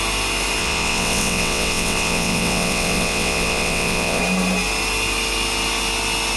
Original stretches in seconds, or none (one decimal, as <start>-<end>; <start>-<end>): 0.0-0.6; 4.2-6.4